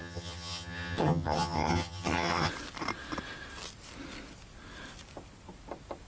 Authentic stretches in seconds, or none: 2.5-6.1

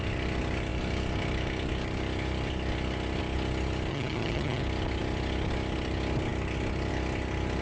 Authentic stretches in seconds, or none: 0.0-3.9; 4.6-7.6

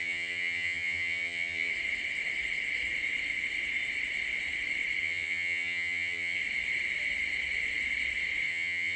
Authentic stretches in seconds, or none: 1.7-5.0; 6.4-8.5